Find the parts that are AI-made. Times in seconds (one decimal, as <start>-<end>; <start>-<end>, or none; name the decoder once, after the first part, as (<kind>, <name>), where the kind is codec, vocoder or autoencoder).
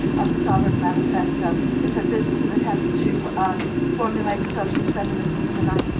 3.9-4.8 (vocoder, BigVGAN v2)